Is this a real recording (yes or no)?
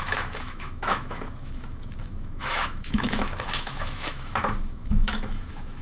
no